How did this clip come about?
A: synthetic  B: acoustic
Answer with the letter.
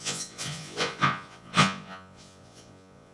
A